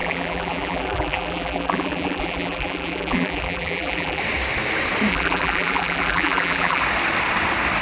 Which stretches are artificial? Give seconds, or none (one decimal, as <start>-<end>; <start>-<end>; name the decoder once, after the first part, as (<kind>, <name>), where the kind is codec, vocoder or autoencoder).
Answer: 0.0-4.2 (vocoder, BigVGAN v2); 5.1-6.8